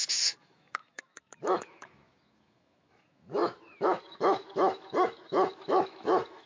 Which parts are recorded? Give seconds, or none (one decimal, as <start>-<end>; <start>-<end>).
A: none